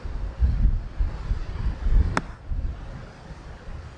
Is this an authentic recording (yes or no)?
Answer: yes